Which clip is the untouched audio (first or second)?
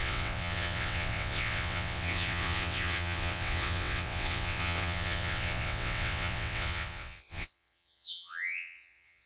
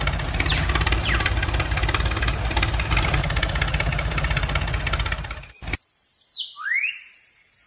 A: second